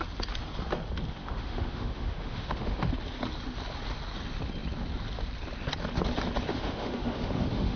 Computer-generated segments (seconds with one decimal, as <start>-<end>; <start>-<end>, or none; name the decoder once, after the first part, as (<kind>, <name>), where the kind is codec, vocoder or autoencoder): 1.2-2.9 (autoencoder, DAC-VAE); 6.5-7.8